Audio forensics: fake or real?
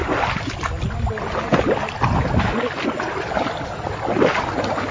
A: real